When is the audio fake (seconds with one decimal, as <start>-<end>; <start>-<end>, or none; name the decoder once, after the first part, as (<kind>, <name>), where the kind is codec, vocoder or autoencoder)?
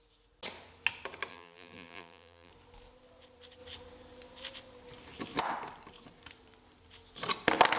1.3-2.5 (vocoder, BigVGAN v2)